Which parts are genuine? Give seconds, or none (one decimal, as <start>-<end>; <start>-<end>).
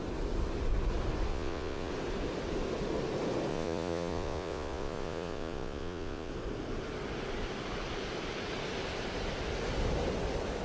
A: 0.0-1.3; 1.9-3.5; 6.3-10.6